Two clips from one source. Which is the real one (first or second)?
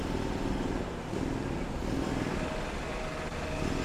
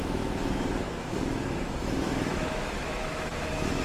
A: first